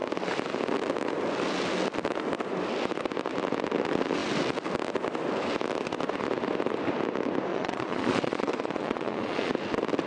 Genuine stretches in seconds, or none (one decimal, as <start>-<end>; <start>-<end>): 0.0-7.5; 9.5-10.1